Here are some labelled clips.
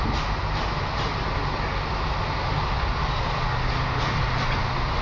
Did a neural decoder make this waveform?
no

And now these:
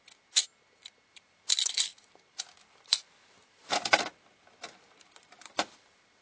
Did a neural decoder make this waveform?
no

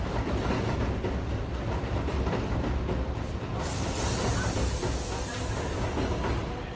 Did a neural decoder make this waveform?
no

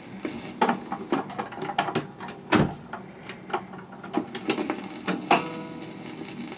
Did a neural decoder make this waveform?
no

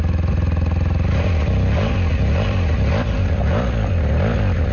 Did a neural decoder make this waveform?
no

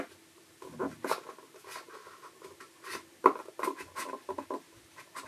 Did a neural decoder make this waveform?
no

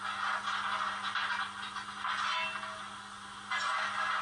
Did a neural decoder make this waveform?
no